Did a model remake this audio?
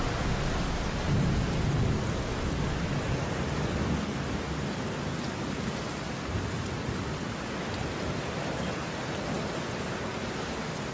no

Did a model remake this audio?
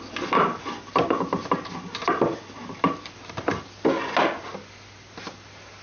no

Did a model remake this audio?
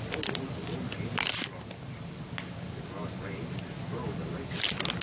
no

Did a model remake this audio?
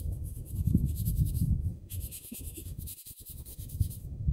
yes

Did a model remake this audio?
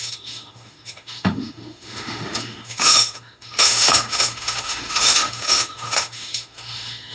yes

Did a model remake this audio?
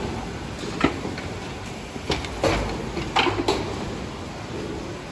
no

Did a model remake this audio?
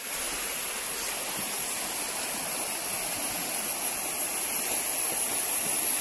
no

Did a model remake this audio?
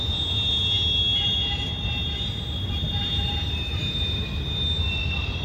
no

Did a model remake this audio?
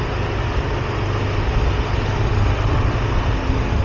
no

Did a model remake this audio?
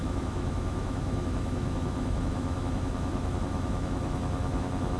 yes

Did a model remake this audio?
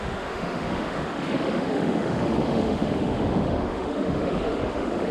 yes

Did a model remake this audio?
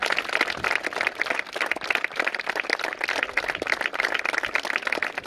no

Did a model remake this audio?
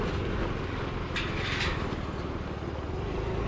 no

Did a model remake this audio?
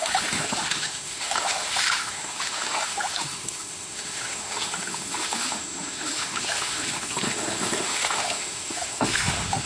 yes